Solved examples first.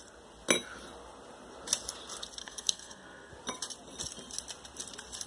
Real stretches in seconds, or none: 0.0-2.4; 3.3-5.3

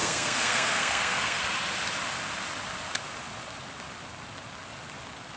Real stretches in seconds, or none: 1.4-5.4

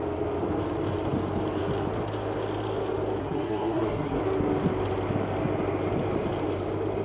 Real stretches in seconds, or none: 0.0-3.2; 4.2-7.0

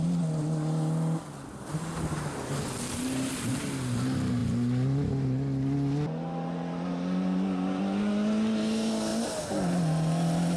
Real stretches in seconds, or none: 0.0-10.6